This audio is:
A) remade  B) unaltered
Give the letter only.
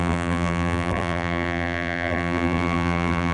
A